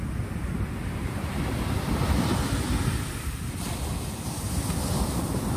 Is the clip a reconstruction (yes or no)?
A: no